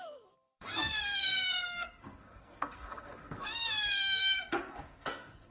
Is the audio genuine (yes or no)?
no